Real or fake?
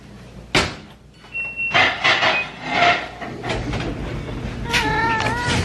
real